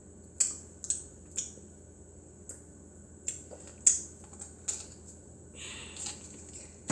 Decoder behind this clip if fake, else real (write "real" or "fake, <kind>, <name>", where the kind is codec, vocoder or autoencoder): real